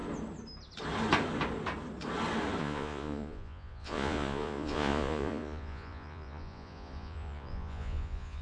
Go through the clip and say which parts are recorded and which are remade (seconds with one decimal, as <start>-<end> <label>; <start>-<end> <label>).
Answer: 0.0-2.6 recorded; 2.6-8.4 remade